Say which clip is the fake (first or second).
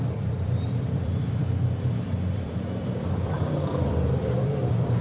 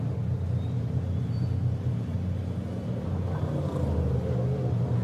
first